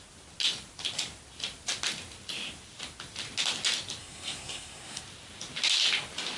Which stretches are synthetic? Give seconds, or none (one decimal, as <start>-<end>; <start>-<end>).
4.0-5.0